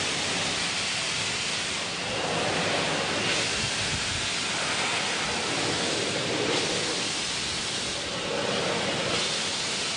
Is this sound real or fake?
real